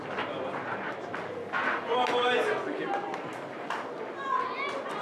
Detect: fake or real real